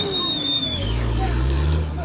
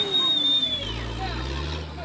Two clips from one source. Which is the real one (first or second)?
second